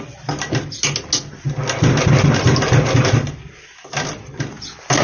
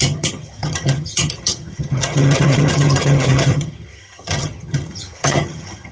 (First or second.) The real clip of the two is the first